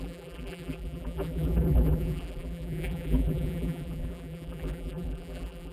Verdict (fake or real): fake